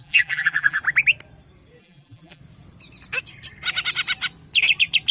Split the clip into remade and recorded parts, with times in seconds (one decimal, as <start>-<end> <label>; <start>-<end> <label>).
0.0-0.8 remade; 0.8-1.8 recorded; 1.8-2.4 remade; 2.4-5.1 recorded